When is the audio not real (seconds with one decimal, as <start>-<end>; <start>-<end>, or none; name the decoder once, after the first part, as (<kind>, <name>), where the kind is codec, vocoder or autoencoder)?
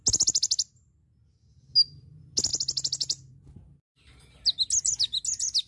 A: none